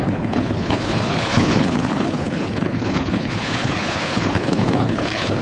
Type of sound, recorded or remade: remade